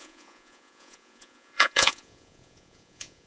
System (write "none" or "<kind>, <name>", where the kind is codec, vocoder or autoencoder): vocoder, Vocos